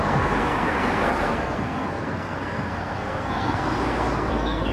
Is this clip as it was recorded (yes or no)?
no